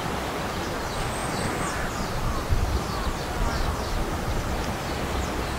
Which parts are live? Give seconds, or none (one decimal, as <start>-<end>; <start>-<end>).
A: 0.0-1.2; 4.5-5.6